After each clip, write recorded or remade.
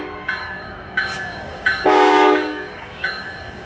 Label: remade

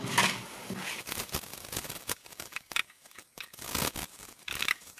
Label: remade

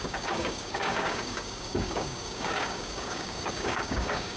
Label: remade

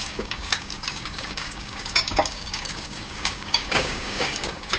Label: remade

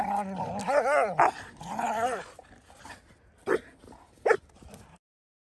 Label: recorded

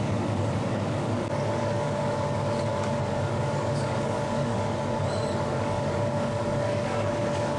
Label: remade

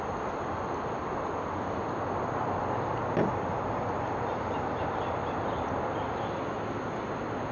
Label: recorded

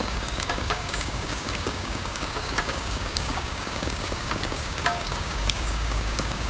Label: remade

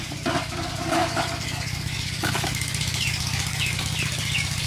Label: remade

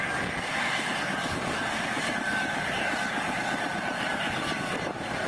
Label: remade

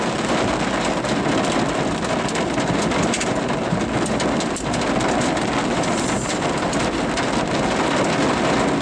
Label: recorded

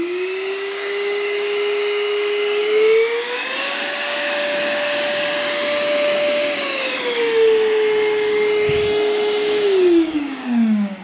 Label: remade